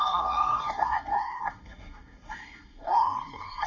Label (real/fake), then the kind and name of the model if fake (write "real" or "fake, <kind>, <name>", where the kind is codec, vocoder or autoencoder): fake, codec, SNAC